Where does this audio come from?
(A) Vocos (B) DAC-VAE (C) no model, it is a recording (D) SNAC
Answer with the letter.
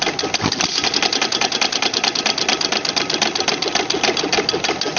C